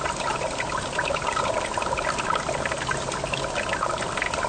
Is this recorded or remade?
recorded